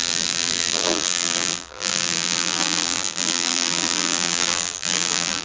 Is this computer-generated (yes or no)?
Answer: yes